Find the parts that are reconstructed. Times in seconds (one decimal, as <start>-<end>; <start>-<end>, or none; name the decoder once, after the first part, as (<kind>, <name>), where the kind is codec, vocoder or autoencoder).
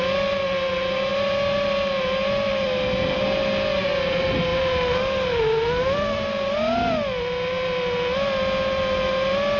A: none